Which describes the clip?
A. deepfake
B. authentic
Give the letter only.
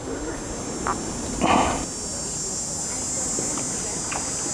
B